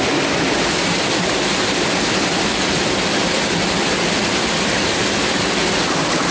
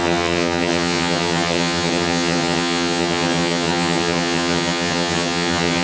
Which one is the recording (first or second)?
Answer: first